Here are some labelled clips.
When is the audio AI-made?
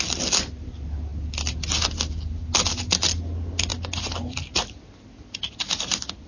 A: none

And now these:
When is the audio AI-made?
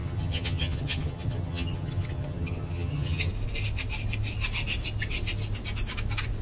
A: 0.0-3.3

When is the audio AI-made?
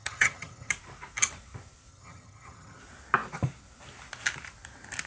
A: 0.0-0.7; 1.9-2.8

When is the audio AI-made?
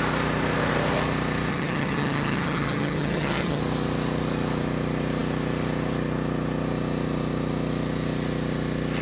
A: 1.5-3.6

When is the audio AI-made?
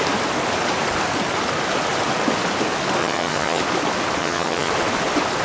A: 3.0-3.6; 4.2-4.7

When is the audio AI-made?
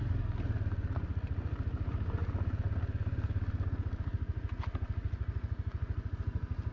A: none